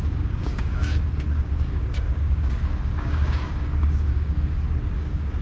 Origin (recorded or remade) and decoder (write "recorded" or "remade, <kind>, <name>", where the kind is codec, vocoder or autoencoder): remade, codec, DAC